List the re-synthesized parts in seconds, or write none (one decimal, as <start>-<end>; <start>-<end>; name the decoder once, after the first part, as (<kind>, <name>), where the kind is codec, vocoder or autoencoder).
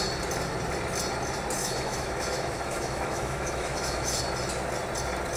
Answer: 1.6-4.2 (autoencoder, DAC-VAE)